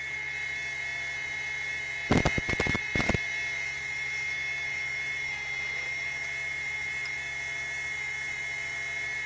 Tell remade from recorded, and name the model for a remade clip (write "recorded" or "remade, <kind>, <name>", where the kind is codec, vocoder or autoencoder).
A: recorded